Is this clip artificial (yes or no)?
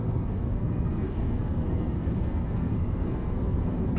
yes